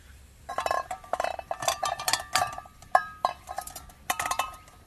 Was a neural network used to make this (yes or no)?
yes